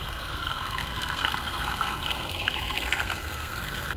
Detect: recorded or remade remade